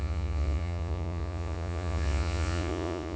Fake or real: fake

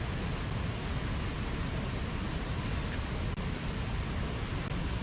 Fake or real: real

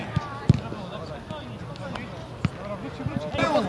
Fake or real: real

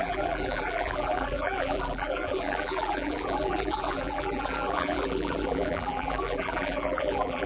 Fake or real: fake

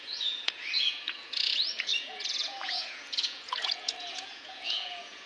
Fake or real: fake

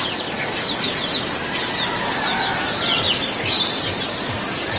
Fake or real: real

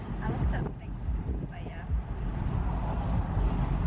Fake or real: real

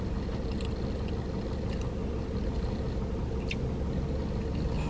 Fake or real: real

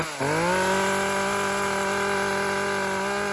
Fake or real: real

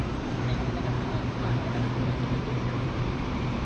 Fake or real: fake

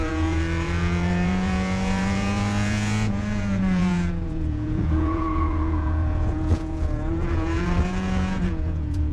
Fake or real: fake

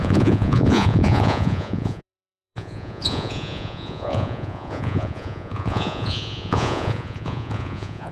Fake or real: fake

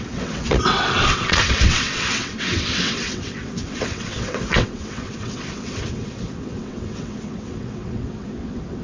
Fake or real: fake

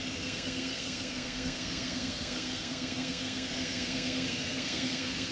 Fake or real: fake